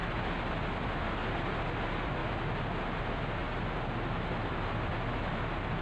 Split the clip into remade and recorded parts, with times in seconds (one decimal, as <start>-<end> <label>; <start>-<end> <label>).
0.0-5.8 recorded